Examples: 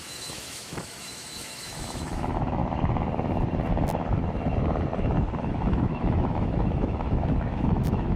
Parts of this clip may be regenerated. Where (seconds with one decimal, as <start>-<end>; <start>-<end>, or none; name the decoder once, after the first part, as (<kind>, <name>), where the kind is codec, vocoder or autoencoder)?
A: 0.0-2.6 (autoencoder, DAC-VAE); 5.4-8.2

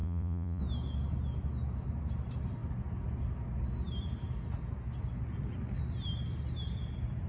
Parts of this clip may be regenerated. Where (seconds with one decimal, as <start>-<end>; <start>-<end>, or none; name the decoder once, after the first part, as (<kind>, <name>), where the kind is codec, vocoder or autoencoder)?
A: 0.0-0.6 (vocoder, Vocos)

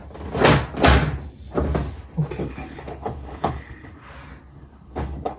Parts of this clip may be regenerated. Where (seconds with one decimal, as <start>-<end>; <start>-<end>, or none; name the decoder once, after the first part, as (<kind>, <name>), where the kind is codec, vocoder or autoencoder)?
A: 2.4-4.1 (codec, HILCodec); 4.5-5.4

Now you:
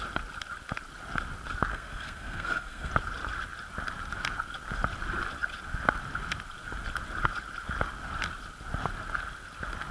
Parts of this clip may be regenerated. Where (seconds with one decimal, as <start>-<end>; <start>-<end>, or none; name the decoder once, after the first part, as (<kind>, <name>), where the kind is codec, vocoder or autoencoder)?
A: 1.7-2.9 (codec, SNAC)

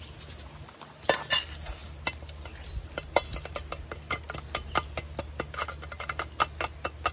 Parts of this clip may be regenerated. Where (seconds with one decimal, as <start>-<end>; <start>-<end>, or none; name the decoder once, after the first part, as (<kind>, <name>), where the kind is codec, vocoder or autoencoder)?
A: none

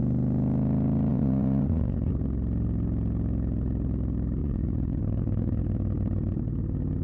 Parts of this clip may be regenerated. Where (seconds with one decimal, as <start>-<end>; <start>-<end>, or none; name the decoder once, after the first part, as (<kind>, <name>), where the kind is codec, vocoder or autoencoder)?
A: 1.1-2.1 (vocoder, Vocos); 4.4-5.6